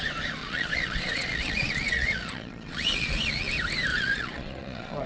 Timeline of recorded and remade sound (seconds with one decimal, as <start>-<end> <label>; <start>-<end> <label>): 0.0-0.4 recorded; 0.4-3.5 remade; 3.5-3.9 recorded; 3.9-5.1 remade